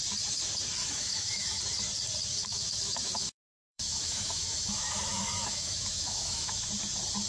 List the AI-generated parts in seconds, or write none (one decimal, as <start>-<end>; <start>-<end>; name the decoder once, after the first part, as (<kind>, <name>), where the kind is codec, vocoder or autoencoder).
0.8-1.6 (autoencoder, DAC-VAE); 2.4-6.7